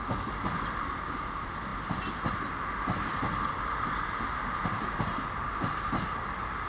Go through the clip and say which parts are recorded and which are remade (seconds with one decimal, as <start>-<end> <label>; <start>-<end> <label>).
0.0-6.7 recorded